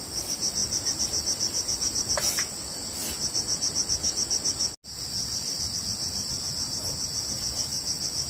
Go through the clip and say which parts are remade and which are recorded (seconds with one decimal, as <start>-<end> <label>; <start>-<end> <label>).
0.0-0.6 recorded; 0.6-2.5 remade; 2.5-7.7 recorded; 7.7-8.3 remade